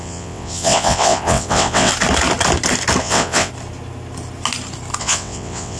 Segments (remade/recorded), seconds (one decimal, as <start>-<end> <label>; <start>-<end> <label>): 0.0-1.9 remade; 1.9-3.0 recorded; 3.0-3.5 remade; 3.5-5.0 recorded; 5.0-5.8 remade